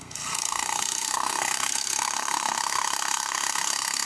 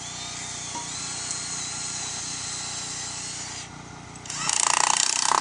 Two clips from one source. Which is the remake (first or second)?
first